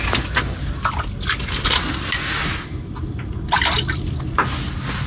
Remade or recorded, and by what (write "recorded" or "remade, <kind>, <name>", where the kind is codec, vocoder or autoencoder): recorded